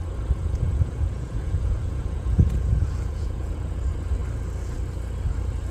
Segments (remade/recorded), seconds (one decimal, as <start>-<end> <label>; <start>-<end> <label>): 0.0-0.4 recorded; 0.4-3.8 remade; 3.8-5.7 recorded